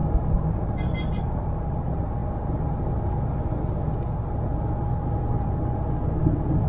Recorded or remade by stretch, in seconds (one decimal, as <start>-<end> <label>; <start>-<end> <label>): 0.0-1.2 recorded; 1.2-2.2 remade; 2.2-6.2 recorded; 6.2-6.7 remade